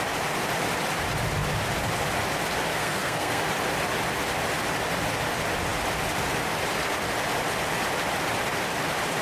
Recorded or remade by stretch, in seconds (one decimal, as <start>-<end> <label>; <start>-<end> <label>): 0.0-2.7 recorded; 2.7-3.4 remade; 3.4-9.2 recorded